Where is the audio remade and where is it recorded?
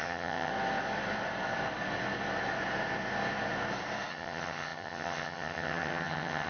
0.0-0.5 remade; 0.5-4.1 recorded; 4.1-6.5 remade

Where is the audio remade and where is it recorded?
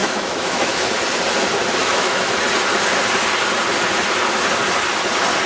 0.0-0.9 remade; 0.9-1.8 recorded; 1.8-2.3 remade; 2.3-5.5 recorded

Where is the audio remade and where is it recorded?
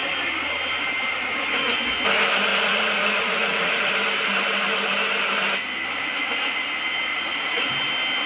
0.0-2.5 recorded; 2.5-3.9 remade; 3.9-7.1 recorded; 7.1-7.7 remade; 7.7-8.3 recorded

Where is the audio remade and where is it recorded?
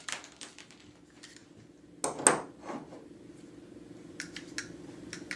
0.0-5.4 recorded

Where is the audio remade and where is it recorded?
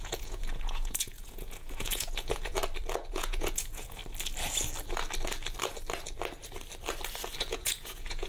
0.0-2.6 remade; 2.6-3.1 recorded; 3.1-4.0 remade; 4.0-7.4 recorded; 7.4-8.3 remade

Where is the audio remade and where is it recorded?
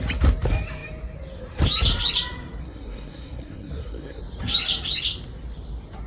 0.0-2.6 recorded; 2.6-4.2 remade; 4.2-6.1 recorded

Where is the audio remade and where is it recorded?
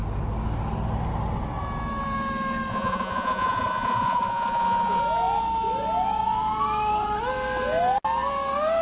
0.0-2.7 recorded; 2.7-5.0 remade; 5.0-8.8 recorded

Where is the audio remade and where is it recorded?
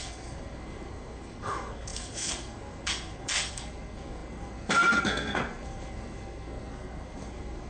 0.0-7.7 remade